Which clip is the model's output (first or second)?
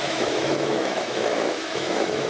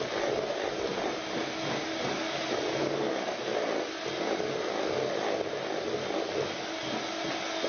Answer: first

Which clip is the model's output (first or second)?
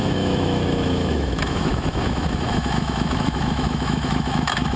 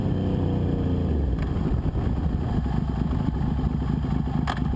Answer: first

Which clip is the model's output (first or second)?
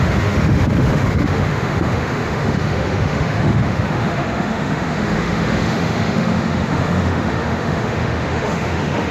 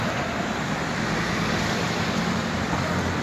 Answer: first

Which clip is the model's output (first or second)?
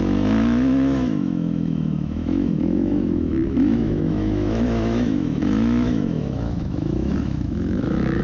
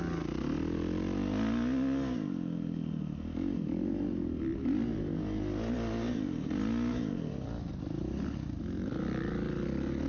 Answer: first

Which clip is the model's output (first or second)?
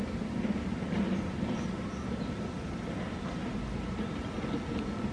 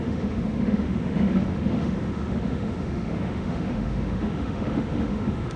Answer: second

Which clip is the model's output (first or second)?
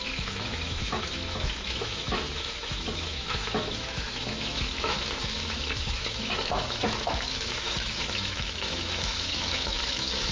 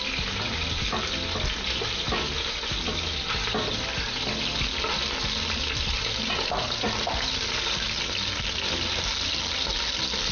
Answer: first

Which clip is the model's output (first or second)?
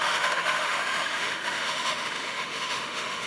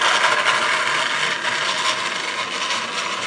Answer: first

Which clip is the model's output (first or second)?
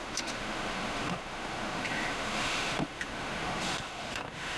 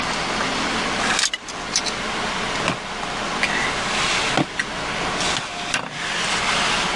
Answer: first